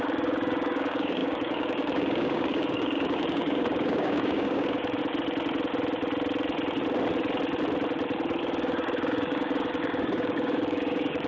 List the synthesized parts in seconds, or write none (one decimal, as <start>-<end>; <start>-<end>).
0.0-5.0; 8.4-11.3

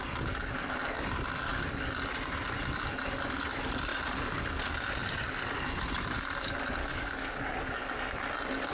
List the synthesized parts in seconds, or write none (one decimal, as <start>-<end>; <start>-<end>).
6.8-7.7

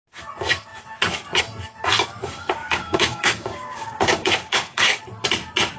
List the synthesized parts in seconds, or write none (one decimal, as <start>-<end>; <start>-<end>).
2.6-5.0